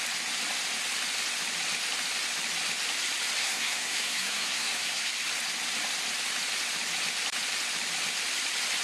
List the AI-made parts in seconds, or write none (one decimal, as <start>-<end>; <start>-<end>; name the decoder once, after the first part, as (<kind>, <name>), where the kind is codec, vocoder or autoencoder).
3.4-5.1 (codec, SNAC)